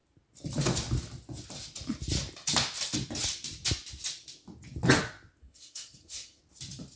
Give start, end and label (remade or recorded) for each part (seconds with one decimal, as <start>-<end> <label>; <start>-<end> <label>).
0.0-5.4 recorded; 5.4-6.4 remade; 6.4-7.0 recorded